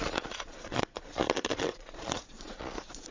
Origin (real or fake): fake